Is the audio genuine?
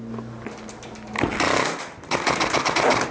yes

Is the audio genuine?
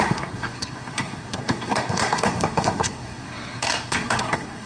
no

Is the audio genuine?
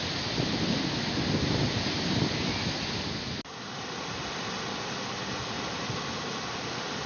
yes